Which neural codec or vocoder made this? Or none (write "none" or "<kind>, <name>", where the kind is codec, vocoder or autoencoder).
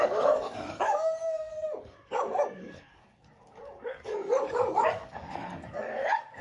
codec, DAC